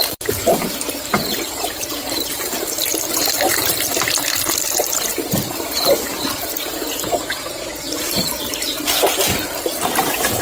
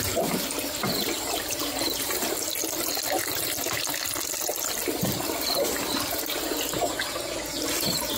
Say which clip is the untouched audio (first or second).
second